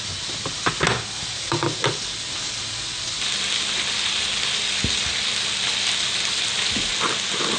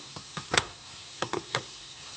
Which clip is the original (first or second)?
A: first